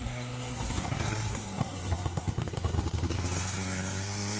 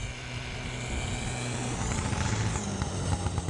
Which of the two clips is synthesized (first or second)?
first